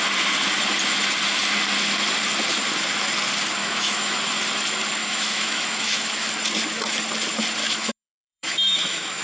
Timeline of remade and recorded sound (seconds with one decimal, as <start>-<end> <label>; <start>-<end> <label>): 0.0-3.6 recorded; 3.6-4.2 remade; 4.2-5.0 recorded; 5.0-6.3 remade; 6.3-7.6 recorded; 7.6-9.2 remade